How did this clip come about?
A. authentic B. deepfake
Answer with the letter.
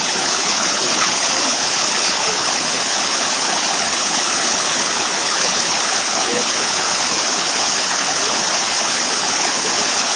B